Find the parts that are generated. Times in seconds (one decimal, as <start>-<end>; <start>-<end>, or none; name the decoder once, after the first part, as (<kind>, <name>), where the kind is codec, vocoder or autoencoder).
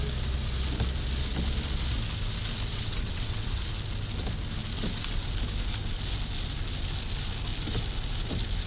2.7-3.6 (vocoder, WaveNeXt)